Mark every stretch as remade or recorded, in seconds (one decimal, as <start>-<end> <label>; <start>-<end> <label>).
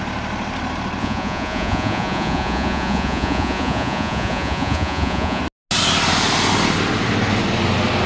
0.0-1.0 recorded; 1.0-5.4 remade; 5.4-8.1 recorded